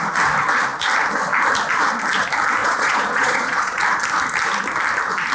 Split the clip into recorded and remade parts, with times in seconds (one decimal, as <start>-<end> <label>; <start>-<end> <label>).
0.0-2.6 recorded; 2.6-3.8 remade; 3.8-5.3 recorded

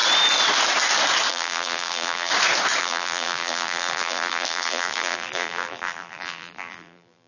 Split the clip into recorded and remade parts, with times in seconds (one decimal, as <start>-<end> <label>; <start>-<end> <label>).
0.0-1.3 recorded; 1.3-2.3 remade; 2.3-2.8 recorded; 2.8-7.3 remade

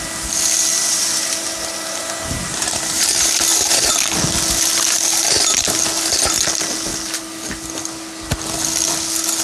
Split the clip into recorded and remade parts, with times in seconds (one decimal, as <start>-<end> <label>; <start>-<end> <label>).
0.0-0.7 recorded; 0.7-3.9 remade; 3.9-9.4 recorded